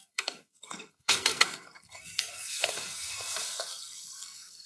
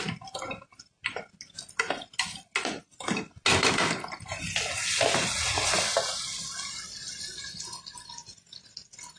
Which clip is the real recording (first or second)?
second